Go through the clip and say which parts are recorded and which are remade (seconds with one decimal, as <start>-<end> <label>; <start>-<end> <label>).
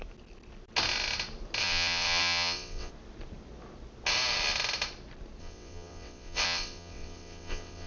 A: 0.0-1.6 recorded; 1.6-2.9 remade; 2.9-5.4 recorded; 5.4-7.9 remade